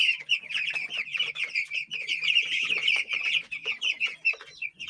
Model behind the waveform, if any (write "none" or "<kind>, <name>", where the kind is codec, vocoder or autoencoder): vocoder, Vocos